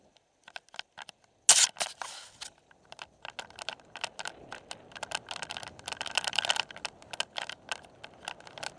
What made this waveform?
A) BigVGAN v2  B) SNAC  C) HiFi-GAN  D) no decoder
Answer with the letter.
D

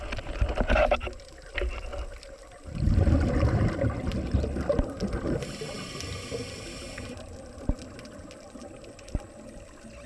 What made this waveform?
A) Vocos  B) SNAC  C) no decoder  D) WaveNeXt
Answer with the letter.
C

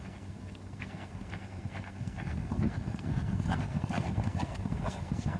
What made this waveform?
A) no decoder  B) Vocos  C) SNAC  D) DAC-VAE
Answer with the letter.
C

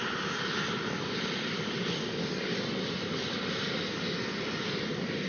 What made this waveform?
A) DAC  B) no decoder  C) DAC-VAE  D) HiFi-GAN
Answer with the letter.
B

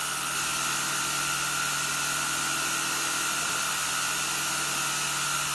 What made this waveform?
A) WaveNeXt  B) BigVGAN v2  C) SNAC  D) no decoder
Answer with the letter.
D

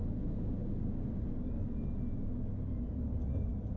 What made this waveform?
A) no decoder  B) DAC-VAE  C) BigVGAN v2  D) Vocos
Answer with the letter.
A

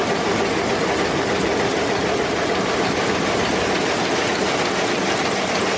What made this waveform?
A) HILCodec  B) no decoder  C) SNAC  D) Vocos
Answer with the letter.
B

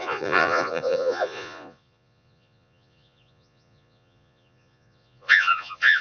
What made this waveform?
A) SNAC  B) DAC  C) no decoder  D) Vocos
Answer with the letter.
D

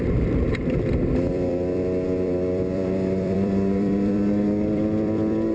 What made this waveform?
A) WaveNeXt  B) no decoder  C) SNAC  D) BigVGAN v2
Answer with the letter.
D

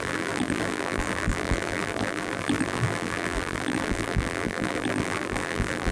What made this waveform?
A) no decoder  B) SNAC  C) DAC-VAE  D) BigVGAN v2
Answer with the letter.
D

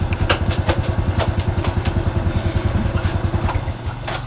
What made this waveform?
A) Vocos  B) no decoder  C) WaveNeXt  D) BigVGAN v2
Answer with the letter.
B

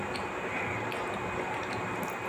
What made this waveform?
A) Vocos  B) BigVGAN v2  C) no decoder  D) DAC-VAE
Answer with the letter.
C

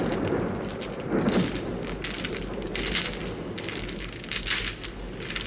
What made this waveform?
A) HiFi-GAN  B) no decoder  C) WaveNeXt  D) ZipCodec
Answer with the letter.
B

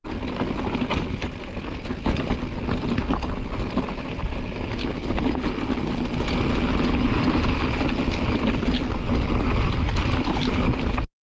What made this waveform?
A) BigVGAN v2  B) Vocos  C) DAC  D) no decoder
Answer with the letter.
D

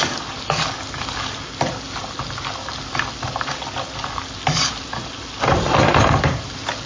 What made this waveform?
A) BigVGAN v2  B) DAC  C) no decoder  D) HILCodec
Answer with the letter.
C